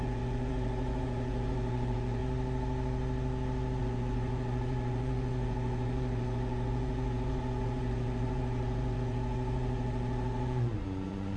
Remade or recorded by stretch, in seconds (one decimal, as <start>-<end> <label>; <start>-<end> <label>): 0.0-2.2 remade; 2.2-3.8 recorded; 3.8-11.4 remade